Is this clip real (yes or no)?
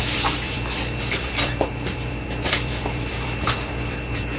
no